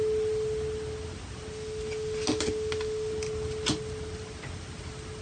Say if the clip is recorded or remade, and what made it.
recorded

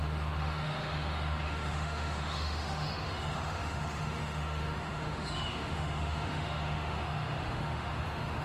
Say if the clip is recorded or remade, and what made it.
remade, autoencoder, DAC-VAE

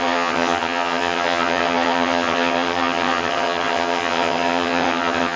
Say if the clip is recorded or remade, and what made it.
remade, vocoder, HiFi-GAN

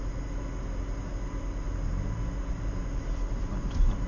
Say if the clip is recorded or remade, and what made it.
recorded